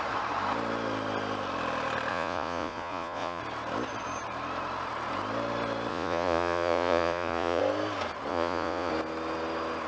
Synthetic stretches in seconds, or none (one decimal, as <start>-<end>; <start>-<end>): 2.1-3.4; 5.9-7.6; 8.3-8.9